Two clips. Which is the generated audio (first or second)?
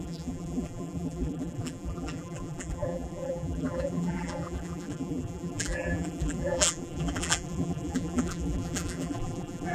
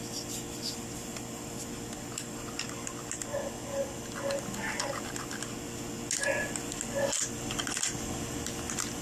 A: first